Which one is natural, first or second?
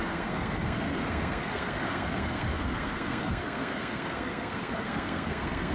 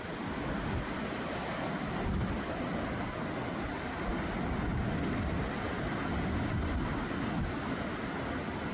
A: second